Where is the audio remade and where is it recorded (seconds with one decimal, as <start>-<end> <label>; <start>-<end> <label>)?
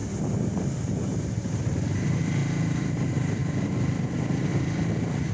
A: 0.0-0.7 recorded; 0.7-3.4 remade; 3.4-5.3 recorded